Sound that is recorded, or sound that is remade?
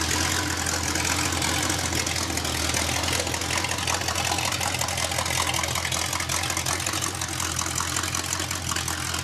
recorded